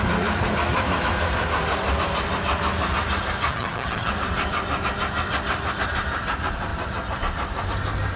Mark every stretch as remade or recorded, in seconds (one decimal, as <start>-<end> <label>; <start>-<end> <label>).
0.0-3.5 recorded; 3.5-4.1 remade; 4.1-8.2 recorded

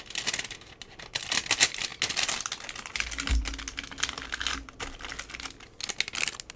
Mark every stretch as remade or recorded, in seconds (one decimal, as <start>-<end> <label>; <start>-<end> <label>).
0.0-6.6 recorded

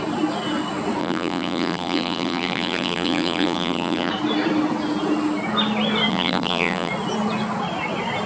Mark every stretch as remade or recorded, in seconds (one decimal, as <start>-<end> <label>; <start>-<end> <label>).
0.0-1.0 recorded; 1.0-4.1 remade; 4.1-6.1 recorded; 6.1-6.9 remade; 6.9-8.3 recorded

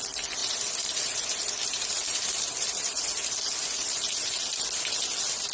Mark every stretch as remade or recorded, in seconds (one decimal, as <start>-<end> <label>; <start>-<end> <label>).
0.0-0.4 recorded; 0.4-3.3 remade; 3.3-5.5 recorded

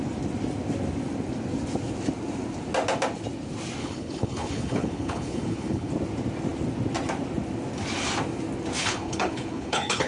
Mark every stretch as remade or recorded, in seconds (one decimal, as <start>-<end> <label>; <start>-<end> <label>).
0.0-3.8 recorded; 3.8-5.9 remade; 5.9-8.8 recorded; 8.8-10.1 remade